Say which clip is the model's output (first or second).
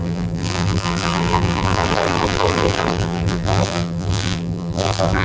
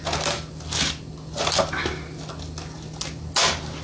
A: first